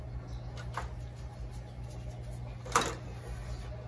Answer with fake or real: real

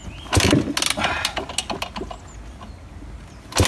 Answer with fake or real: real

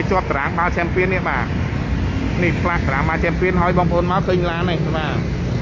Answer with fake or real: real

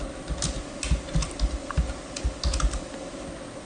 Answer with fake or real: real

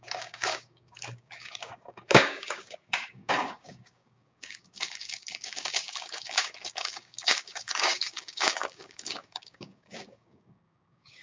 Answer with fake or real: fake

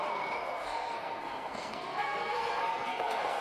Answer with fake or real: fake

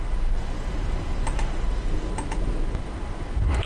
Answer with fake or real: real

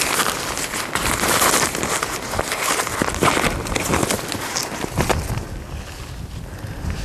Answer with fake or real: real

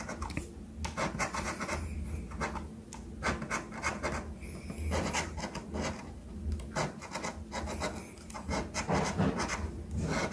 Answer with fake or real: real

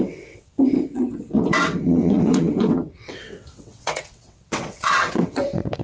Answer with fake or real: fake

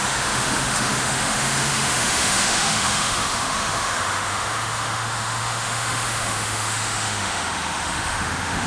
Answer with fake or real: fake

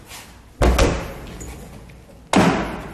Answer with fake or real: real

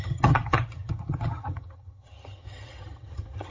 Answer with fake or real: fake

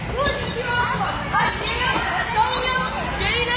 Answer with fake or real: real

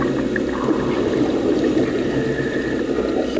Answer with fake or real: real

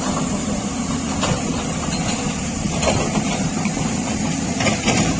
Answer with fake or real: fake